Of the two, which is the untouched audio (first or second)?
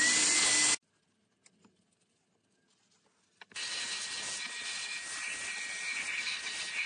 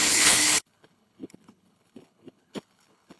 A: first